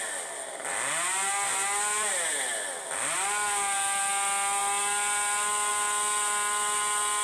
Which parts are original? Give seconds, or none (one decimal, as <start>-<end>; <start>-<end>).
0.0-7.2